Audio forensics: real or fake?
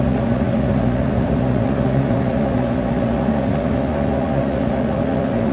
fake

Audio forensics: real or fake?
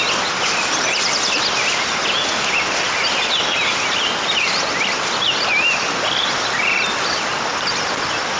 real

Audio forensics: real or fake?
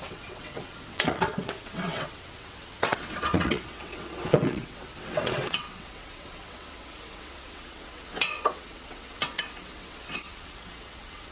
fake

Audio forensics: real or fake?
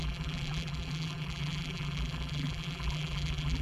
fake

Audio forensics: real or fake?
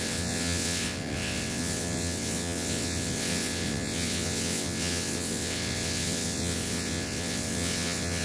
fake